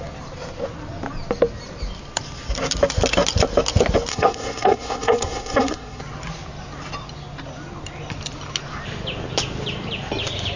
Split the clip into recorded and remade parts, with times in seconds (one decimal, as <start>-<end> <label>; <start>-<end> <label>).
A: 0.0-4.1 recorded; 4.1-6.0 remade; 6.0-10.6 recorded